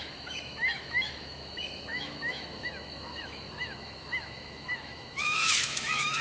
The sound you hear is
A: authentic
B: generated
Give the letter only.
B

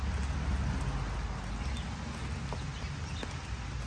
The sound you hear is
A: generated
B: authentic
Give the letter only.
B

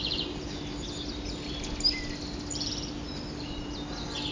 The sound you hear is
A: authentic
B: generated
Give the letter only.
A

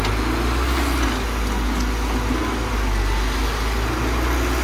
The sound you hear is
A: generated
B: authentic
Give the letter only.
B